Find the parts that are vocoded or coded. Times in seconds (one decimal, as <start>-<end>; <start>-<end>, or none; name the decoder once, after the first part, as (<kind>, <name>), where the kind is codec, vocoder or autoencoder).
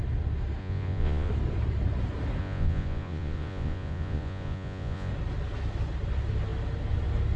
0.6-1.3 (vocoder, Vocos); 2.4-5.1